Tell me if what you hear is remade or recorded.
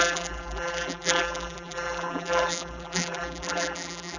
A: remade